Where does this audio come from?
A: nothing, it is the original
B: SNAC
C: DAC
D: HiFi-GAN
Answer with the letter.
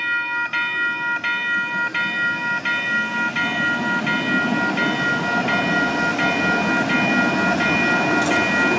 A